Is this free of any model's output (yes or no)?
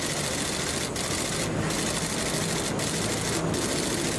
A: yes